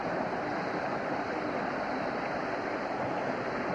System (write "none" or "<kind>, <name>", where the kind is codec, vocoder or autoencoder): none